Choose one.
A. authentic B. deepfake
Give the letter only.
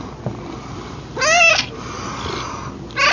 A